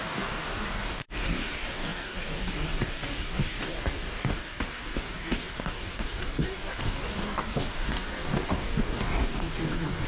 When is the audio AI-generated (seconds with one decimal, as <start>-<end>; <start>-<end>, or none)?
0.0-10.1